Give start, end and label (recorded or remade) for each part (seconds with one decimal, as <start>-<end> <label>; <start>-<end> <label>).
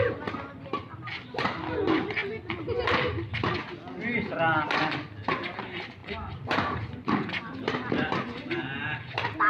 0.0-6.0 recorded; 6.0-7.4 remade; 7.4-9.5 recorded